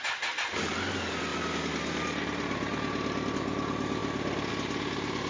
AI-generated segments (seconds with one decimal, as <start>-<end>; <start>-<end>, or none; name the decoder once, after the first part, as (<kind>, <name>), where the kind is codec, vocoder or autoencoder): none